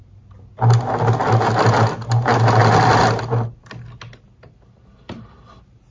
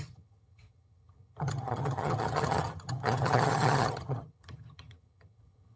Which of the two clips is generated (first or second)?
second